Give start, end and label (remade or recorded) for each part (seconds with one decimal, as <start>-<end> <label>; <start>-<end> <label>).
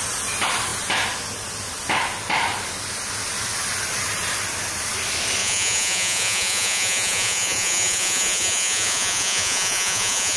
0.0-5.4 recorded; 5.4-10.4 remade